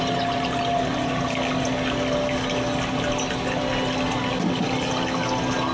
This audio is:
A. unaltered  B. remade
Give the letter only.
A